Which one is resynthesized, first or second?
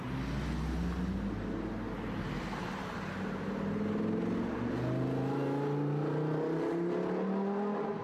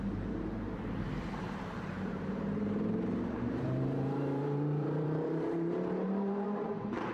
second